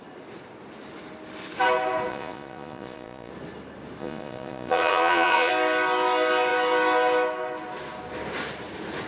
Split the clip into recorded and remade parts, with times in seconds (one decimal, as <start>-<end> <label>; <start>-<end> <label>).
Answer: 0.0-2.1 recorded; 2.1-3.3 remade; 3.3-4.0 recorded; 4.0-5.5 remade; 5.5-9.1 recorded